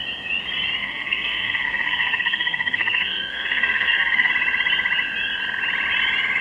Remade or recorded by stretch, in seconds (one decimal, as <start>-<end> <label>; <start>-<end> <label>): 0.0-0.8 recorded; 0.8-4.3 remade; 4.3-6.4 recorded